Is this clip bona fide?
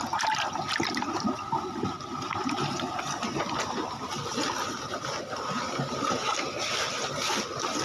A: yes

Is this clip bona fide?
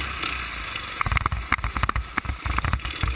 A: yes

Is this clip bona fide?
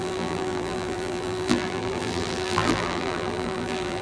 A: no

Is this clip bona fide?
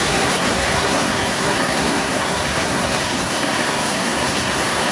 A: no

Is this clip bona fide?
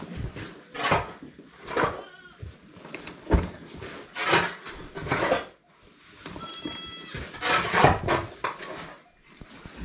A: yes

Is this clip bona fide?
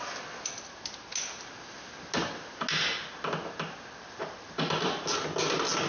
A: yes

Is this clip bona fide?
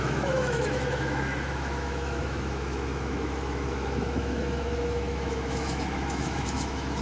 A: no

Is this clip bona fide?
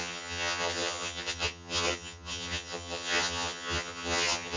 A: no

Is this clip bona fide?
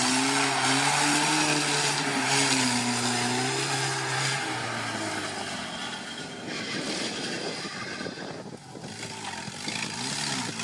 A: no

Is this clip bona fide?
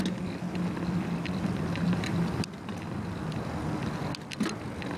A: yes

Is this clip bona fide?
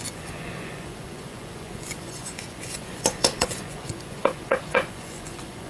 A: no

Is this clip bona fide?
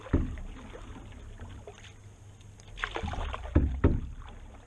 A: yes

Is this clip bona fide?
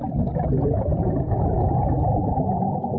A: yes